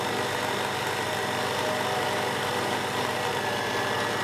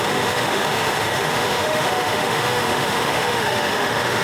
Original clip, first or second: first